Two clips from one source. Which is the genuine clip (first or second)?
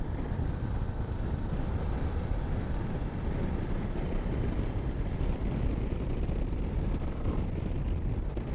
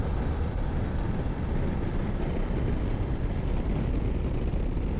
second